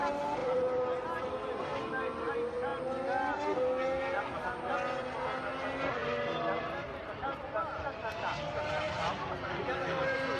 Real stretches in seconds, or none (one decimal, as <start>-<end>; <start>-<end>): 0.0-10.4